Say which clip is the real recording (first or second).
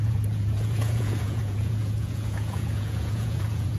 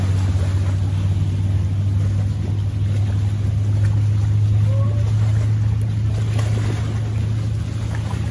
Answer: second